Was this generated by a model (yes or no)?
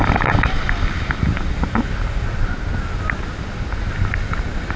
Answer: no